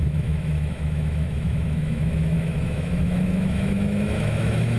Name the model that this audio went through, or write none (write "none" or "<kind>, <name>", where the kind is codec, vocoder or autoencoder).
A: autoencoder, DAC-VAE